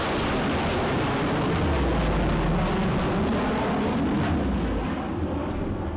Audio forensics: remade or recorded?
recorded